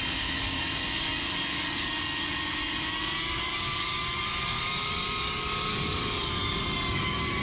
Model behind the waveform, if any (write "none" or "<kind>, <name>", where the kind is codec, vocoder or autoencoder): codec, DAC